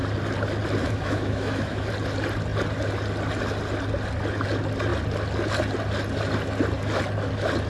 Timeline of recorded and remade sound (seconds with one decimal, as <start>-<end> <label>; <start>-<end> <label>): 0.0-0.8 recorded; 0.8-1.9 remade; 1.9-7.7 recorded

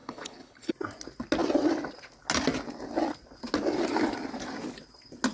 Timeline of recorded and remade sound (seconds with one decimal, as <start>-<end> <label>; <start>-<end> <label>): 0.0-0.7 remade; 0.7-5.3 recorded

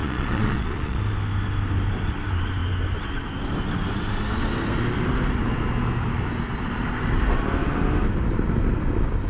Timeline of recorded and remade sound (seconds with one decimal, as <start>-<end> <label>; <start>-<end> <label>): 0.0-1.0 remade; 1.0-9.3 recorded

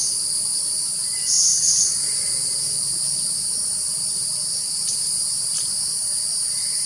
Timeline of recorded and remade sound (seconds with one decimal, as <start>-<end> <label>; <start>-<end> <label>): 0.0-6.9 recorded

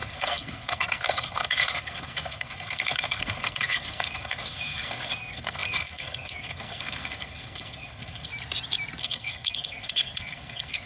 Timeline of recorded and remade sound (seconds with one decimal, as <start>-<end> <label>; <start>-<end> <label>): 0.0-8.3 remade; 8.3-9.0 recorded; 9.0-10.9 remade

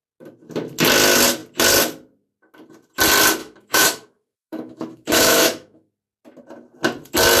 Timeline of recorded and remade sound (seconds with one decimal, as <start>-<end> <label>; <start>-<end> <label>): 0.0-3.4 recorded; 3.4-5.9 remade; 5.9-7.4 recorded

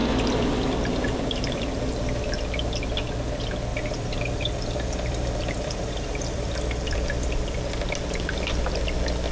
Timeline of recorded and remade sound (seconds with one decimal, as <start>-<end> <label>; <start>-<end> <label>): 0.0-3.7 recorded; 3.7-7.6 remade; 7.6-9.3 recorded